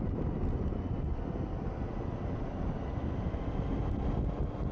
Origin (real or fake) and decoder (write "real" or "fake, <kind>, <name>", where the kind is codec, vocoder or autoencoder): real